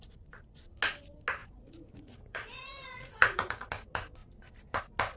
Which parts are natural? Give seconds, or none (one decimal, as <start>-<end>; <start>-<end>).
0.0-1.4; 3.7-5.2